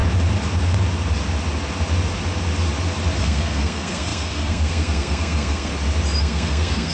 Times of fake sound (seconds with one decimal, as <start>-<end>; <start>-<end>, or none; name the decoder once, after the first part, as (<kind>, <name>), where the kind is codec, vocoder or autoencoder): 3.2-5.7 (codec, SNAC); 6.2-6.9